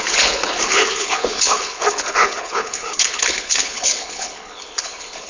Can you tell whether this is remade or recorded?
remade